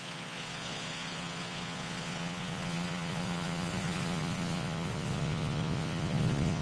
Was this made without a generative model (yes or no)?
no